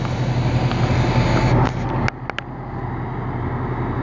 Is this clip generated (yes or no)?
no